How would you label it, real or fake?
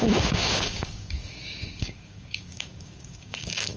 fake